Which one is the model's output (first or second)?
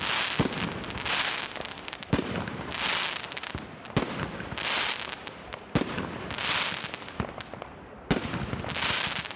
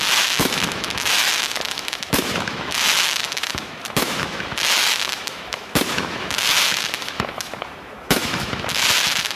second